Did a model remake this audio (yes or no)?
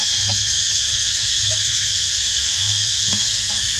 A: yes